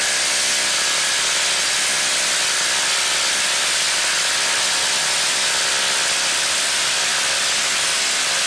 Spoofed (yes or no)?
no